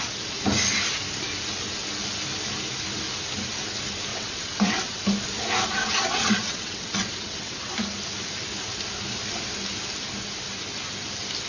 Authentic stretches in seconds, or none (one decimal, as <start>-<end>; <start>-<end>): 0.0-4.1; 5.0-5.8; 7.7-11.5